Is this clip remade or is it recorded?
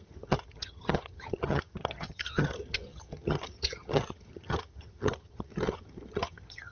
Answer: remade